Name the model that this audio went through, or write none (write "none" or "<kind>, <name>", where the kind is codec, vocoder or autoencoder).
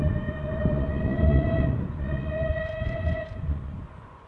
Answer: vocoder, Vocos